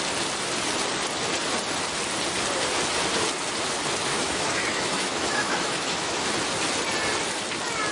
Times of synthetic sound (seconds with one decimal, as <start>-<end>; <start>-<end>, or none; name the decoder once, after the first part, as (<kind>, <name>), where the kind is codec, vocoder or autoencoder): 4.1-6.3 (autoencoder, DAC-VAE)